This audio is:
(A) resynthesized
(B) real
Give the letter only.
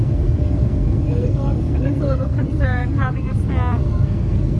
A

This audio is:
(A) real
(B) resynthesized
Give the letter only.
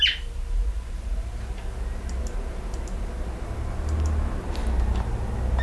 A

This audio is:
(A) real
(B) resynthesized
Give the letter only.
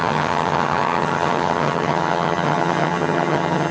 B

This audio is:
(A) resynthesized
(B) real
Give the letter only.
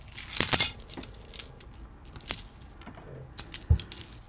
B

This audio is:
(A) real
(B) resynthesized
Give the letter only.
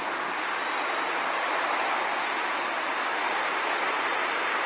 A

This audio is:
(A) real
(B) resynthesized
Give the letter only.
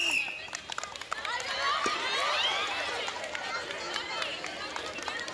A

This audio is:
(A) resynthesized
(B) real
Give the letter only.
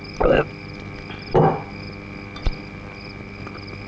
B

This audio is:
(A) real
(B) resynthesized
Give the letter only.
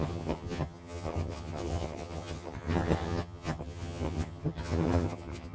B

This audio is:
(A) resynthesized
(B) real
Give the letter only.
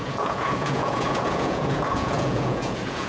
A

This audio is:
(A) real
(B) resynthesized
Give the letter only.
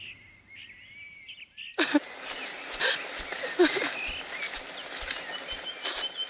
A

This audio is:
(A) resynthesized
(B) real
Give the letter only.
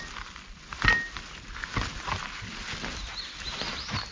B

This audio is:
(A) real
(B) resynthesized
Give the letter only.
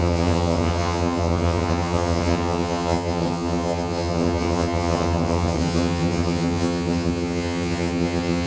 B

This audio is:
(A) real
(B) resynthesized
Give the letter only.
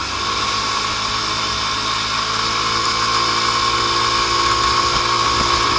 A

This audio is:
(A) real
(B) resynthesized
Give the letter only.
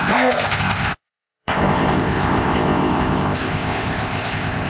B